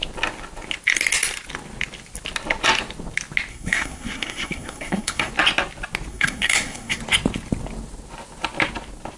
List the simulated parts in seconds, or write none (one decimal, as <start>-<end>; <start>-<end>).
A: 3.5-5.3; 6.1-7.0